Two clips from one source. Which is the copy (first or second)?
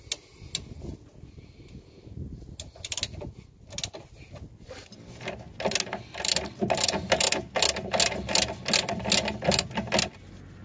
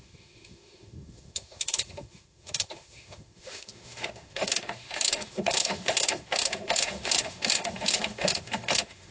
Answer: second